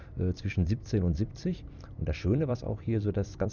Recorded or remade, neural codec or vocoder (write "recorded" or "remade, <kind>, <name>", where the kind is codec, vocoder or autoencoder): remade, vocoder, BigVGAN v2